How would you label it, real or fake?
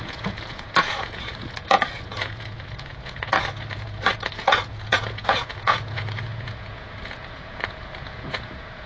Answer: fake